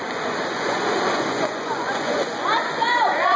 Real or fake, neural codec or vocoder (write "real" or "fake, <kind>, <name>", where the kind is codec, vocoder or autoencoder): fake, vocoder, Vocos